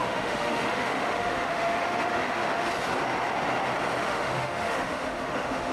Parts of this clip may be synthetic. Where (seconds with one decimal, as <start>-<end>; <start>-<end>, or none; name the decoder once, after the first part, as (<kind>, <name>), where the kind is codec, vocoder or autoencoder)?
0.0-2.7 (autoencoder, DAC-VAE); 4.0-5.7